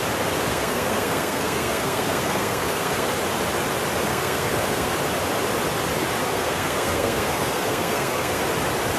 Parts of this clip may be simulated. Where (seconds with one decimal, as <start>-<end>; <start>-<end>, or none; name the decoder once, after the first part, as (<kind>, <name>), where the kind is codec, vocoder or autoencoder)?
0.5-3.1 (codec, SNAC); 4.1-4.9; 6.2-8.4